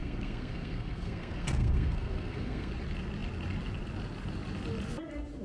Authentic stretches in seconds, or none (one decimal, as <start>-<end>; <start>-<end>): 2.7-5.4